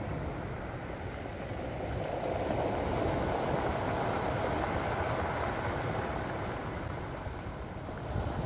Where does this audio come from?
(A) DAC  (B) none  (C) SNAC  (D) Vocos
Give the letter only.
B